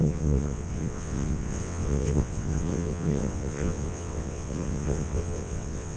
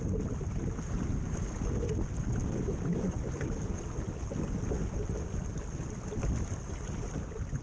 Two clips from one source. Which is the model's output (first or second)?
first